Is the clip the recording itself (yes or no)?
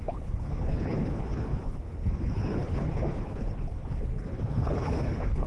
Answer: no